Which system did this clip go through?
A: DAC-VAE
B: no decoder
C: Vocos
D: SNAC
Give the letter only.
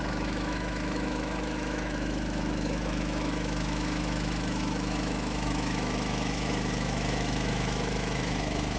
A